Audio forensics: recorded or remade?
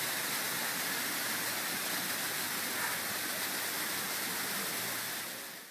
recorded